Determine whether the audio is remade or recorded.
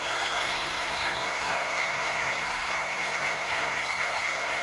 remade